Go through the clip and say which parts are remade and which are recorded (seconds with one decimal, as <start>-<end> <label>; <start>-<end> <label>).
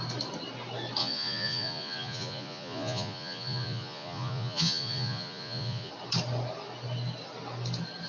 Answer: 0.0-1.0 recorded; 1.0-5.9 remade; 5.9-8.1 recorded